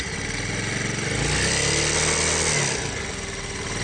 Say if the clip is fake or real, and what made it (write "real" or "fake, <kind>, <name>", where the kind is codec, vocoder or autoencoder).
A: real